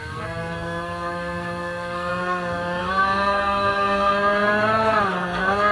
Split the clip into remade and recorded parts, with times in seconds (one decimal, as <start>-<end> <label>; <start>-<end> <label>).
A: 0.0-5.7 remade